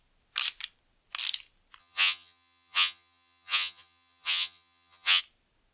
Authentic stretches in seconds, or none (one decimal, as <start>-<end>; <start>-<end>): 0.0-1.8; 5.2-5.7